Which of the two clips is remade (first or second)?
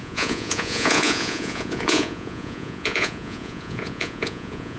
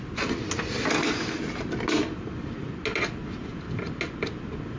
first